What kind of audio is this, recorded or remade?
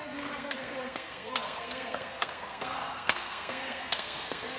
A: remade